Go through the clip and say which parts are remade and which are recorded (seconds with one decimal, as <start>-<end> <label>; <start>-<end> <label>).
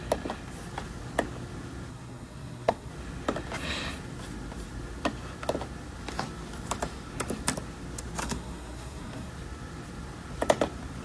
0.0-1.9 recorded; 1.9-2.9 remade; 2.9-8.2 recorded; 8.2-9.3 remade; 9.3-11.0 recorded